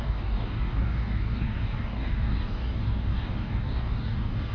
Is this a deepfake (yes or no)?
yes